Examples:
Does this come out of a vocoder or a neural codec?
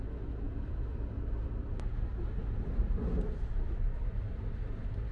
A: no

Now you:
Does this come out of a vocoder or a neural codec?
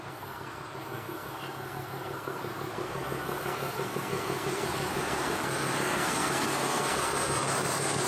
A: yes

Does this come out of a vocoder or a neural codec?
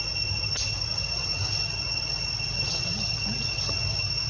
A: no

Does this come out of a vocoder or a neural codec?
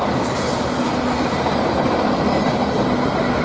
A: no